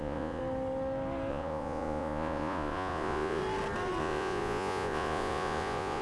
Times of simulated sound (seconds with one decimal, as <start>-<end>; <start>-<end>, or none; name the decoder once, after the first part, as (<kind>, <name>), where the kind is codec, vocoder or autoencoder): 0.0-0.4 (vocoder, Vocos); 1.3-3.4; 4.0-6.0